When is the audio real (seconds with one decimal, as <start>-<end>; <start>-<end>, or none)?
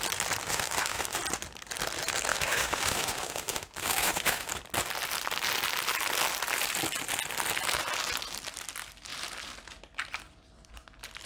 0.0-0.4; 1.2-2.3; 4.5-11.3